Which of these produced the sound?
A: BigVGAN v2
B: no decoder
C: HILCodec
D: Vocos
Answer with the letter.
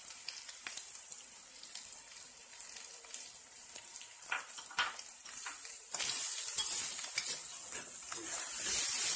A